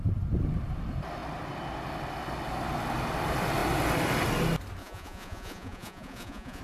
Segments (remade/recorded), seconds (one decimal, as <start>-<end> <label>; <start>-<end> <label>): 0.0-4.8 recorded; 4.8-6.6 remade